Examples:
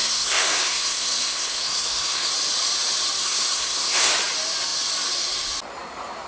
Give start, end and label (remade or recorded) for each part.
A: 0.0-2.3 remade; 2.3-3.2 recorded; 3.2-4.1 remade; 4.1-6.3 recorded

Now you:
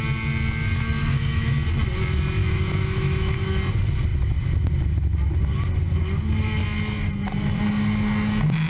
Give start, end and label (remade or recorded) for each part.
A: 0.0-1.0 recorded; 1.0-1.5 remade; 1.5-2.4 recorded; 2.4-3.5 remade; 3.5-8.7 recorded

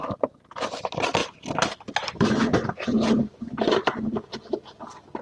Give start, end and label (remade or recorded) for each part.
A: 0.0-1.2 recorded; 1.2-4.3 remade; 4.3-5.2 recorded

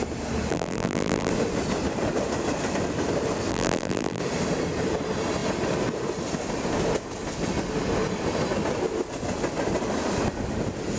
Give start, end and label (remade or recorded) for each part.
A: 0.0-0.5 recorded; 0.5-1.3 remade; 1.3-3.5 recorded; 3.5-4.2 remade; 4.2-11.0 recorded